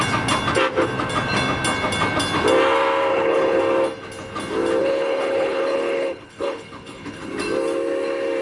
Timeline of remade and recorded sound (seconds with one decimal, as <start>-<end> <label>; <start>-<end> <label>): 0.0-3.1 recorded; 3.1-3.6 remade; 3.6-4.8 recorded; 4.8-7.3 remade; 7.3-8.4 recorded